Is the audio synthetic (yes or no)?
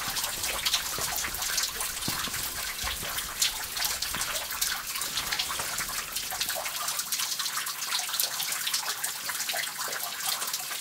no